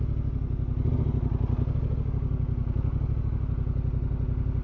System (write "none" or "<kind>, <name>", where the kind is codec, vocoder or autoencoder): none